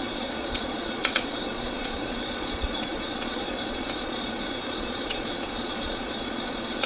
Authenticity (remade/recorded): remade